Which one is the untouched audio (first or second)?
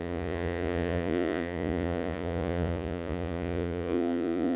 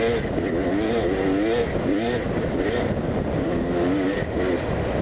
second